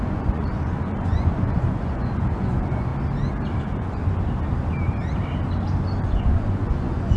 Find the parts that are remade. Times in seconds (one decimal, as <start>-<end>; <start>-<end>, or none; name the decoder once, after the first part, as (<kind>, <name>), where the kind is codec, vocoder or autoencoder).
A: 0.0-2.9 (vocoder, Vocos); 3.6-4.0; 6.0-7.2